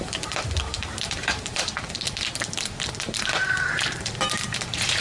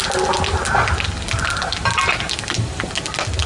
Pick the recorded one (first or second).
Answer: second